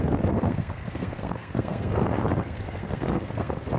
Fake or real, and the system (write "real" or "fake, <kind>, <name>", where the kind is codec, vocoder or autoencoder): fake, codec, SNAC